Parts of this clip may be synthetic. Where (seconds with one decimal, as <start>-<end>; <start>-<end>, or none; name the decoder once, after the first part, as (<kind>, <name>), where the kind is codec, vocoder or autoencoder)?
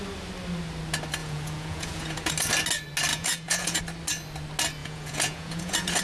1.2-2.3 (vocoder, Vocos); 3.1-3.8; 4.8-6.0